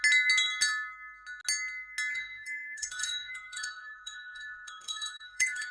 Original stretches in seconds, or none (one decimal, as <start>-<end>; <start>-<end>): 0.0-2.1